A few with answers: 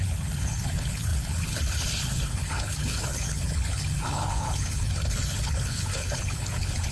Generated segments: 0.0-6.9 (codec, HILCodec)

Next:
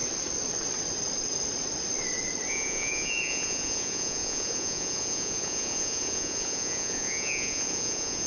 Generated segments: 2.5-8.3 (vocoder, Vocos)

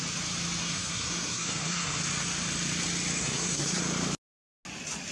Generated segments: 0.6-2.0 (codec, SNAC); 3.2-3.8